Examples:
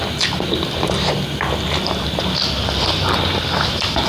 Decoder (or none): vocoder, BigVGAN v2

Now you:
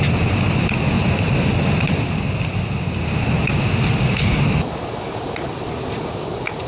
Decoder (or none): none